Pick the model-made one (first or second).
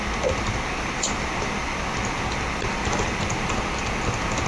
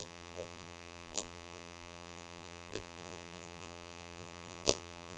second